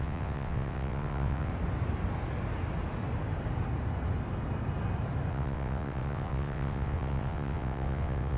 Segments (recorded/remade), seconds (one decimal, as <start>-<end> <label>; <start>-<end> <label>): 0.0-1.5 remade; 1.5-5.3 recorded; 5.3-8.4 remade